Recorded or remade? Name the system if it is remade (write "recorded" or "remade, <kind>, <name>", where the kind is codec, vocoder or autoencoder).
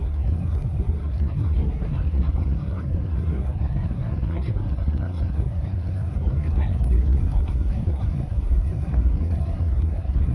remade, codec, SNAC